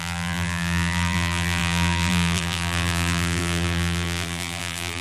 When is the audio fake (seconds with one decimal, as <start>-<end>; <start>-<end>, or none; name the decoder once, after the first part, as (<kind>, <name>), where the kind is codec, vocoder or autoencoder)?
0.0-5.0 (vocoder, BigVGAN v2)